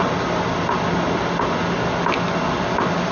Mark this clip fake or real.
real